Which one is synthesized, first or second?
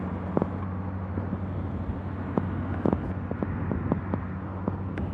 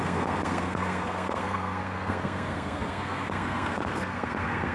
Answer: second